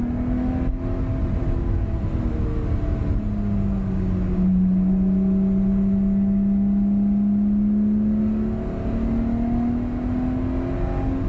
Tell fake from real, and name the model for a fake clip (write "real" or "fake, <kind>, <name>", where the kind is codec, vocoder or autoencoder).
real